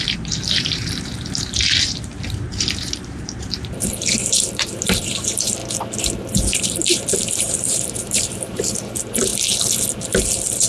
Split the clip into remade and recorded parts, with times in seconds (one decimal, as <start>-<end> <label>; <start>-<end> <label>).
0.0-5.6 remade; 5.6-6.5 recorded; 6.5-9.3 remade; 9.3-10.2 recorded; 10.2-10.7 remade